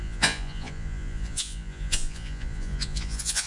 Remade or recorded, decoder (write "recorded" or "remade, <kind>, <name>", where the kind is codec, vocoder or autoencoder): remade, vocoder, Vocos